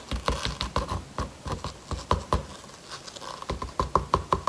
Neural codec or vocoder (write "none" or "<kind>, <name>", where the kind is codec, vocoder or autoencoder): none